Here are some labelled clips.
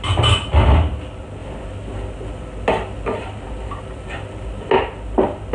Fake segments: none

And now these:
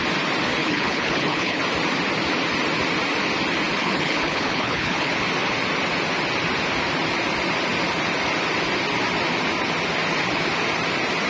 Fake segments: 0.6-1.6; 3.8-5.1